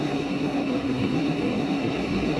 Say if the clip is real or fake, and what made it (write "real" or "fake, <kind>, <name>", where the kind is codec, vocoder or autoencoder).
fake, codec, SNAC